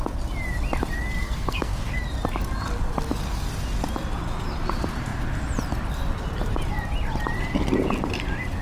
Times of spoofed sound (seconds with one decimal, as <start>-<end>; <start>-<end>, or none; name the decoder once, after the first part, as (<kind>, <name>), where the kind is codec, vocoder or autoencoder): 1.2-1.9 (codec, SNAC)